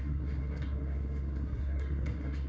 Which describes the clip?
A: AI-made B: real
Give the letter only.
A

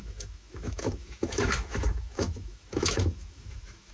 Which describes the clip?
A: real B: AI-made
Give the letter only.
B